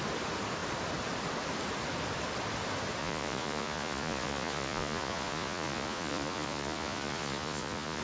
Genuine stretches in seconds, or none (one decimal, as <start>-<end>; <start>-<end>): 0.0-3.0